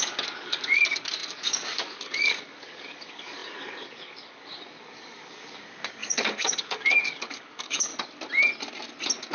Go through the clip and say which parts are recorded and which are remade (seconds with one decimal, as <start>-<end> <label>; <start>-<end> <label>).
0.0-7.9 remade; 7.9-9.3 recorded